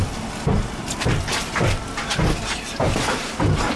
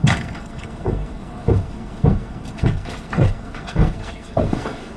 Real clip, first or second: first